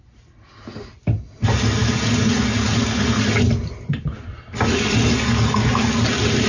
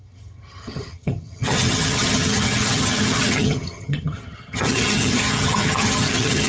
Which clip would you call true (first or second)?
first